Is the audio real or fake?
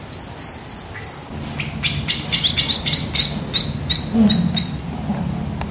real